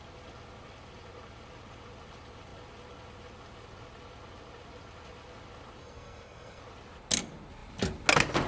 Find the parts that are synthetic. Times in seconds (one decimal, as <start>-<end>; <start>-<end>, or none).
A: 5.8-6.6